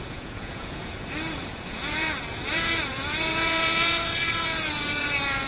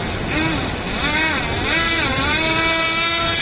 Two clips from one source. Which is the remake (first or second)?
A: first